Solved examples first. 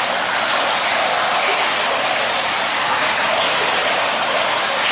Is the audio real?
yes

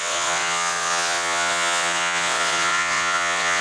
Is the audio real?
no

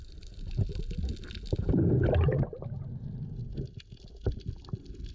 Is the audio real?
yes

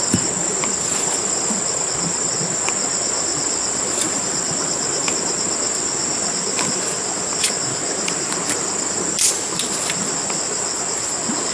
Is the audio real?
yes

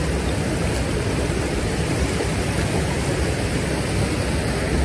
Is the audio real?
yes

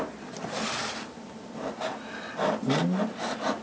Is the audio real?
yes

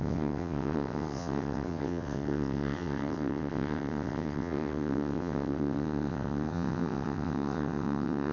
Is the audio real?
no